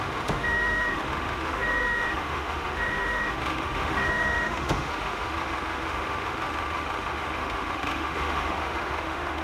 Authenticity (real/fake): fake